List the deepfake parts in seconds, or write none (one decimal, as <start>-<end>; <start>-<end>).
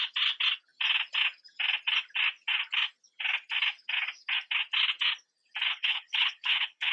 5.7-6.9